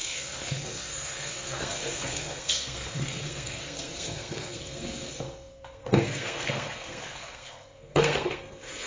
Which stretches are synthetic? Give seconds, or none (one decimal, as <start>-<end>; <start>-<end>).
0.0-8.9